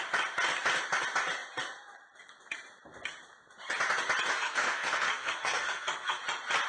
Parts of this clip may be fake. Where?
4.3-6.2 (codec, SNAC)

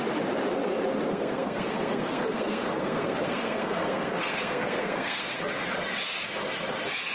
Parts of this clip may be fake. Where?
1.1-5.4 (codec, SNAC)